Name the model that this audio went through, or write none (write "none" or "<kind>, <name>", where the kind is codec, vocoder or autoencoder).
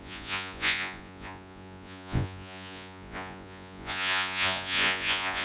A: vocoder, Vocos